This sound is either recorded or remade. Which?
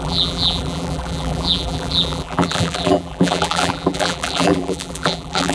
remade